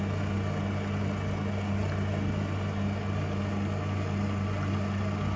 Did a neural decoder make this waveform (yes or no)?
no